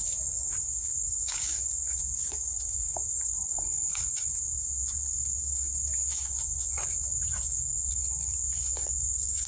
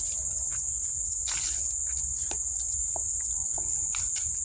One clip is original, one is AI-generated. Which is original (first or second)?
second